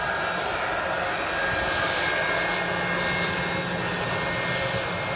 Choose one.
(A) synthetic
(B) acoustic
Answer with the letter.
B